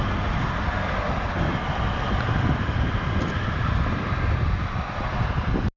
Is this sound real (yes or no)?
yes